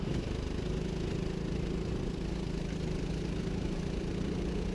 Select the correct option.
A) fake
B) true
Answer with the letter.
B